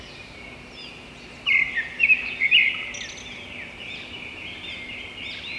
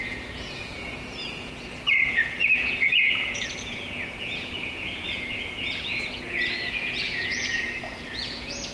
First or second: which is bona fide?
first